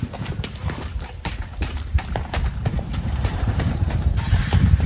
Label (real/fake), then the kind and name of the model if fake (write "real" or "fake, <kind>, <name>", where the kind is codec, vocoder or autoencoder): fake, vocoder, BigVGAN v2